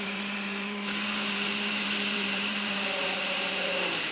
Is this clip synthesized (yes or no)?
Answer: yes